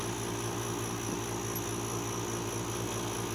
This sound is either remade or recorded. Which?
recorded